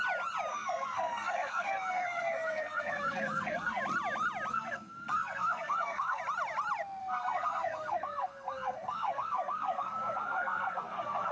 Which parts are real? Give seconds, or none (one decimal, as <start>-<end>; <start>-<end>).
0.0-0.5; 3.8-4.5; 6.2-7.0